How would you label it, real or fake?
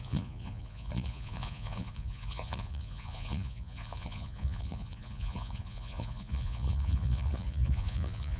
fake